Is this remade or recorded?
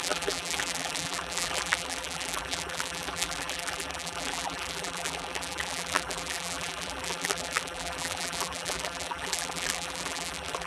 remade